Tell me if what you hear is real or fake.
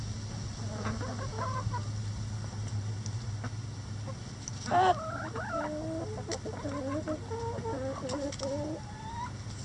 real